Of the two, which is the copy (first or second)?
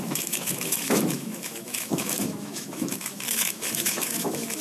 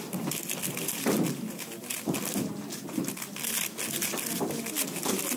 first